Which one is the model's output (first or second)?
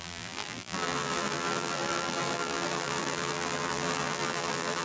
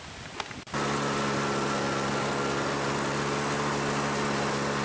first